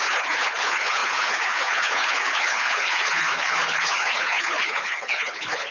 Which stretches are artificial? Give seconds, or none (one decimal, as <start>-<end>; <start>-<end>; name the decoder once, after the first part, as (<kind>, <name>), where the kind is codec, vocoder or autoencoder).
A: 0.0-5.7 (codec, HILCodec)